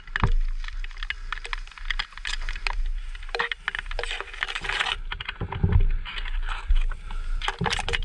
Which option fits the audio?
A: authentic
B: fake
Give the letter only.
A